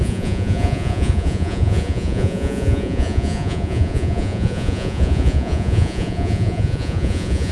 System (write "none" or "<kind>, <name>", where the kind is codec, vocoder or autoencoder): vocoder, Vocos